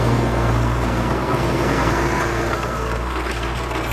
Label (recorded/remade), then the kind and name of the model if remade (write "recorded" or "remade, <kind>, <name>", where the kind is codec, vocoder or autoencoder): remade, codec, SNAC